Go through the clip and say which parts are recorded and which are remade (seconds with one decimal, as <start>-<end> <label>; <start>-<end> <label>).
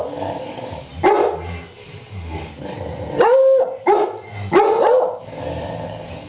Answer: 0.0-0.9 remade; 0.9-1.8 recorded; 1.8-2.5 remade; 2.5-5.2 recorded; 5.2-6.3 remade